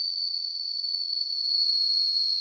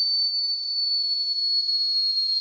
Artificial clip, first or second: first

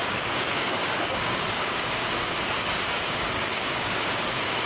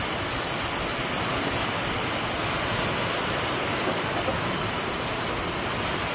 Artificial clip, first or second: first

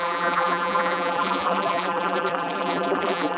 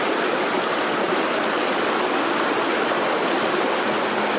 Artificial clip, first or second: first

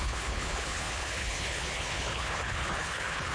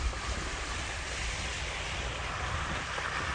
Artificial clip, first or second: first